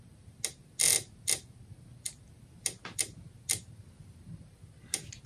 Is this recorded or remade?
recorded